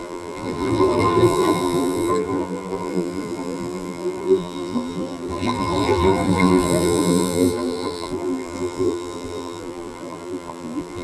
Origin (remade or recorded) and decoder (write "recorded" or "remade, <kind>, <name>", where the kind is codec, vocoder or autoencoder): remade, vocoder, BigVGAN v2